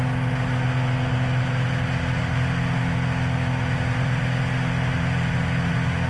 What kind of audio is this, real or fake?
real